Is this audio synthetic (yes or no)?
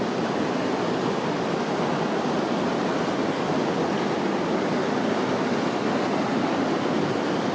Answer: no